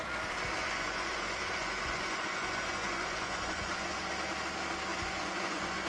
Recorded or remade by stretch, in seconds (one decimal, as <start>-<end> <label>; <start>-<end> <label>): 0.0-0.6 recorded; 0.6-4.1 remade; 4.1-4.9 recorded; 4.9-5.9 remade